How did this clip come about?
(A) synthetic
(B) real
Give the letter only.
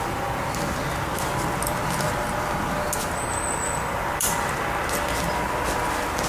B